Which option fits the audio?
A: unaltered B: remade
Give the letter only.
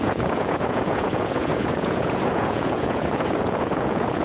B